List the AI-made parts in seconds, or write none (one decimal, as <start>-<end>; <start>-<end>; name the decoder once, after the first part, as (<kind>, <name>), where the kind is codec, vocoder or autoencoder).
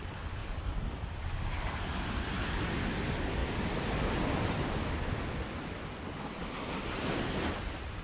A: none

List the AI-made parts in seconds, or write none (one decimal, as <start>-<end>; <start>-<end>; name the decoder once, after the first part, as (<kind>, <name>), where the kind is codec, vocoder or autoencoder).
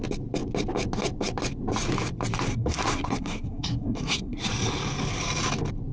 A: 2.5-4.4 (codec, SNAC)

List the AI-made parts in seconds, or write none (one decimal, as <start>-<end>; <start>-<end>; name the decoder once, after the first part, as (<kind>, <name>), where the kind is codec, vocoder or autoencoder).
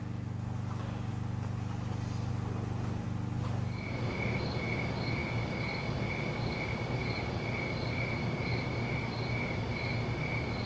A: none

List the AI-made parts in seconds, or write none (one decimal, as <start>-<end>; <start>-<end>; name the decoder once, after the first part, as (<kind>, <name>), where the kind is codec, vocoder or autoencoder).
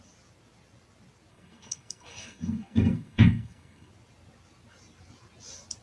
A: 1.3-3.9 (codec, SNAC)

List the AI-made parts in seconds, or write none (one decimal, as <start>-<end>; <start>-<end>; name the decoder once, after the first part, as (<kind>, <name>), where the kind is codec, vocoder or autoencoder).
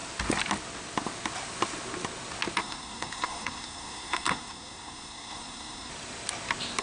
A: 2.6-5.9 (codec, SNAC)